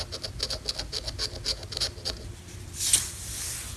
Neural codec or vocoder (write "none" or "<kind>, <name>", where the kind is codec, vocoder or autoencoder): none